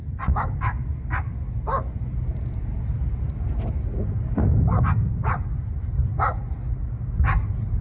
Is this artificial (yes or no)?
no